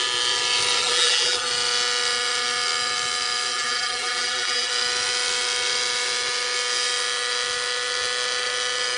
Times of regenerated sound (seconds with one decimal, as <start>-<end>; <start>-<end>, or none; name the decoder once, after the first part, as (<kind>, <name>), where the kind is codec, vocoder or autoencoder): 0.8-1.5 (vocoder, BigVGAN v2); 3.5-4.7